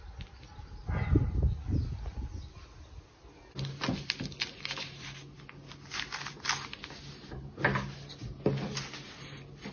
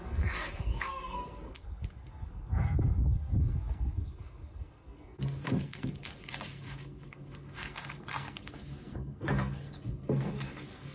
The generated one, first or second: second